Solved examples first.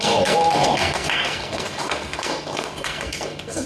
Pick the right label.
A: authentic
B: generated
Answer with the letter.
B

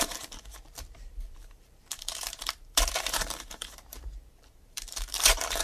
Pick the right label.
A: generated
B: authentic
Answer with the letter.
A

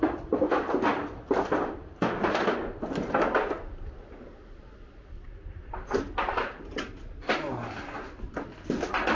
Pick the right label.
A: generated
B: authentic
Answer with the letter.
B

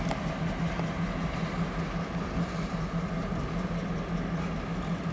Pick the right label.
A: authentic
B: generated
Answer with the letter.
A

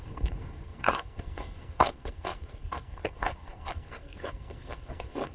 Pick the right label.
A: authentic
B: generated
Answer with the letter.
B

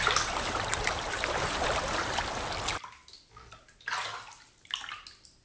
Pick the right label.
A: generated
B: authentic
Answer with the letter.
B